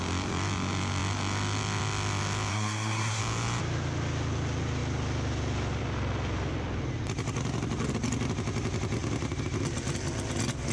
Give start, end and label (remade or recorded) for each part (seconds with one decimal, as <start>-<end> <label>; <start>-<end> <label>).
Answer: 0.0-2.5 recorded; 2.5-3.2 remade; 3.2-10.7 recorded